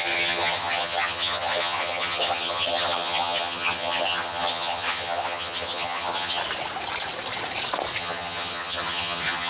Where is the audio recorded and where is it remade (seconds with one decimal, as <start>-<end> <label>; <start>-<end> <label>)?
0.0-6.4 remade; 6.4-8.0 recorded; 8.0-9.5 remade